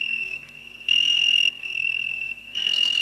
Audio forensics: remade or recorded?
remade